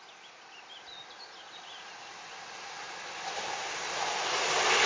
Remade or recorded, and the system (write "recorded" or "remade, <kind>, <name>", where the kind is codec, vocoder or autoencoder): recorded